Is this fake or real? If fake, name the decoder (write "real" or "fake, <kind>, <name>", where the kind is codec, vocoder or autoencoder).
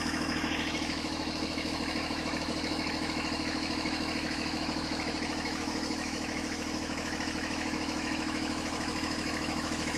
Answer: fake, autoencoder, DAC-VAE